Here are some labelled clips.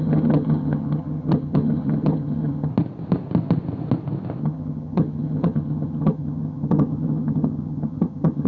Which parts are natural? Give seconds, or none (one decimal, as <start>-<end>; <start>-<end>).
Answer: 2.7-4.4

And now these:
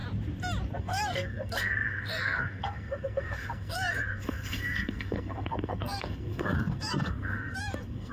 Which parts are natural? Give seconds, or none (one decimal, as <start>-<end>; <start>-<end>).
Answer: 0.0-0.8

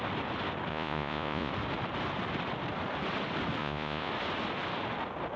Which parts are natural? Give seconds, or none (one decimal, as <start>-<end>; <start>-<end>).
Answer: 0.0-0.7; 1.5-3.6; 4.1-5.4

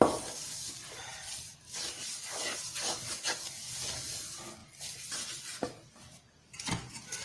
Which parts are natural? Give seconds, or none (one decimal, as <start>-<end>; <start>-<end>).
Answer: 0.0-7.2

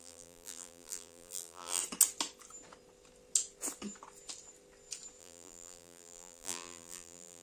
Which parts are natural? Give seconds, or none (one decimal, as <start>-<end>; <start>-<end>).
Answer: 1.8-5.2

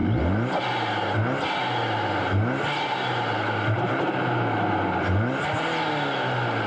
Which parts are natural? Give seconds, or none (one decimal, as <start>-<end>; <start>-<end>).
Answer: 0.0-6.7

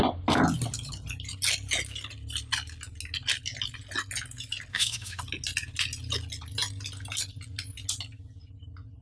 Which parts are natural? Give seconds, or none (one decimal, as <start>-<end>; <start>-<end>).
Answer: 0.0-4.7; 5.2-9.0

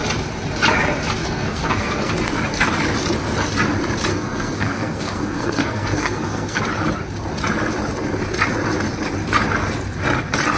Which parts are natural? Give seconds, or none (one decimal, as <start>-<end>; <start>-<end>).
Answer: 0.0-1.2; 2.1-4.1; 6.6-10.6